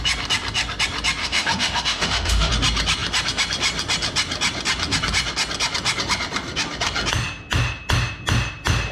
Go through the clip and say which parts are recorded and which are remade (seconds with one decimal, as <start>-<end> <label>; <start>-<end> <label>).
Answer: 0.0-1.2 recorded; 1.2-2.5 remade; 2.5-8.9 recorded